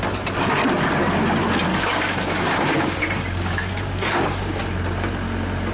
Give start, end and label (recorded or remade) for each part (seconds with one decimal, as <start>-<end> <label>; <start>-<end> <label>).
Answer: 0.0-1.7 recorded; 1.7-4.6 remade; 4.6-5.7 recorded